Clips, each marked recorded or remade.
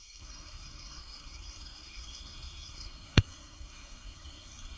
remade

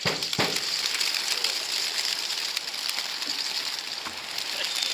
recorded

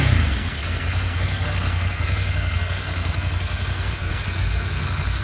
remade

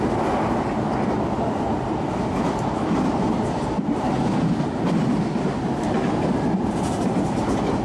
recorded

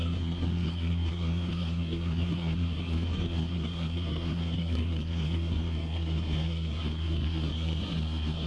remade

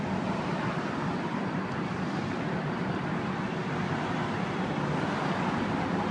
recorded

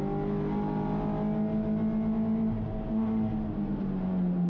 recorded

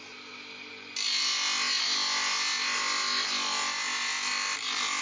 recorded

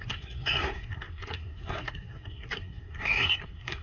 remade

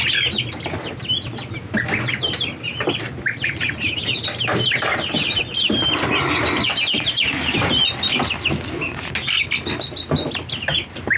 recorded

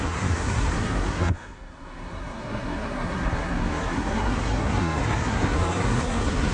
remade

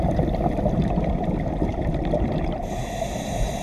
recorded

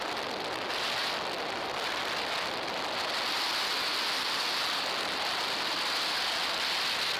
recorded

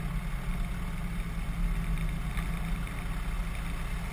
recorded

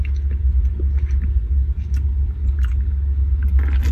recorded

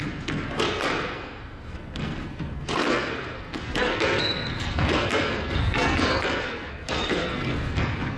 remade